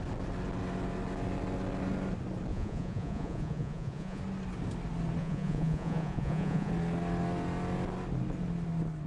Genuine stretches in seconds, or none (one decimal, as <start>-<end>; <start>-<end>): 0.0-2.5; 4.2-5.2; 6.7-9.1